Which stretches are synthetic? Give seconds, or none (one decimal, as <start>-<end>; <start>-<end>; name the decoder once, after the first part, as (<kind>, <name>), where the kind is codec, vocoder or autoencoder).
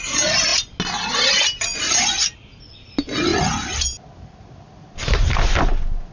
none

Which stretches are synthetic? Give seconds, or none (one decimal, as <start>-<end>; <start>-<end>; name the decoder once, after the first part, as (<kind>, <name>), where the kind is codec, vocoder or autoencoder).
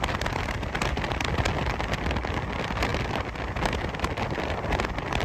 none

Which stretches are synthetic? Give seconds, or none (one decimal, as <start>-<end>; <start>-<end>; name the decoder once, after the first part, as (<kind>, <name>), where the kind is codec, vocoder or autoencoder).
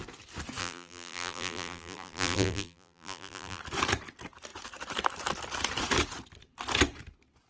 0.6-3.6 (vocoder, BigVGAN v2)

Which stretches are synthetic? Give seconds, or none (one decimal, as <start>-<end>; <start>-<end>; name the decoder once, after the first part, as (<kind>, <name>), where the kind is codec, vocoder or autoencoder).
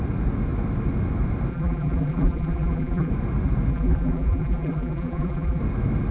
1.5-3.1 (vocoder, BigVGAN v2); 3.7-5.6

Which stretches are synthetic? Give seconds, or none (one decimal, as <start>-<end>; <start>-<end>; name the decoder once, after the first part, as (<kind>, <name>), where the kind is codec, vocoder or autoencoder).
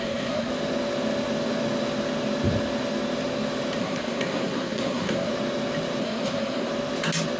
0.0-0.5 (codec, SNAC); 3.8-5.3; 6.0-6.7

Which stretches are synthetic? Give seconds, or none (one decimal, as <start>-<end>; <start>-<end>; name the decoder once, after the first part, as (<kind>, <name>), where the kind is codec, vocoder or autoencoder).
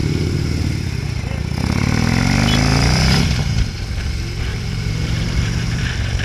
2.7-3.6 (vocoder, BigVGAN v2); 4.5-5.8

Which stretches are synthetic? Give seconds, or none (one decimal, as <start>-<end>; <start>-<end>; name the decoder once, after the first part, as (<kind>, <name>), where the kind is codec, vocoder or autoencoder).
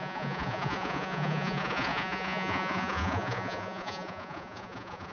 0.0-5.1 (vocoder, Vocos)